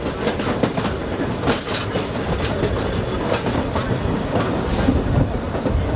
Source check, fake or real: real